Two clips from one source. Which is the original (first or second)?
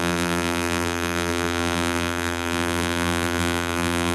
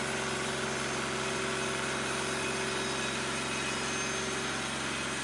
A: second